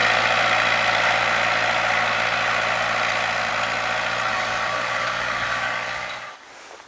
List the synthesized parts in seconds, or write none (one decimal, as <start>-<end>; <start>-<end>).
4.3-6.5